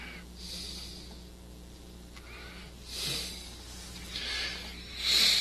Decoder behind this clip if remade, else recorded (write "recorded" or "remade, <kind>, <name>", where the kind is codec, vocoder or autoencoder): recorded